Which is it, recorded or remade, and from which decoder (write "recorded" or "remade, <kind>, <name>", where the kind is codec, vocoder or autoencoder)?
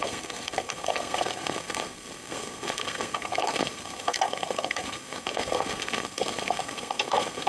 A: remade, codec, SNAC